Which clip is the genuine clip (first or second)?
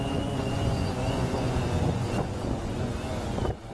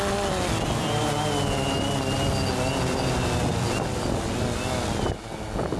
second